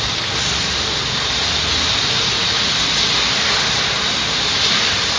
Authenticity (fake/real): real